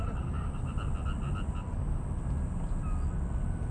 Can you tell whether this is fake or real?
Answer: real